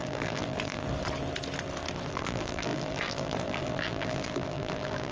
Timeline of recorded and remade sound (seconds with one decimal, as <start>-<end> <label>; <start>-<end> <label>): 0.0-0.8 remade; 0.8-2.1 recorded; 2.1-5.1 remade